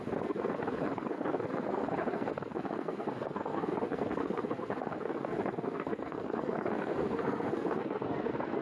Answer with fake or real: fake